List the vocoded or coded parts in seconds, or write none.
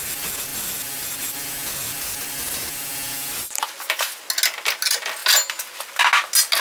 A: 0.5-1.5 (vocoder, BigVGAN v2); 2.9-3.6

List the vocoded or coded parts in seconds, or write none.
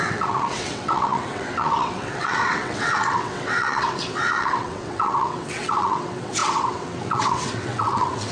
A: 0.0-8.3 (vocoder, WaveNeXt)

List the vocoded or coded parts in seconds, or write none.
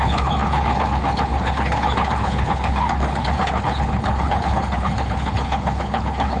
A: 0.0-6.4 (codec, HILCodec)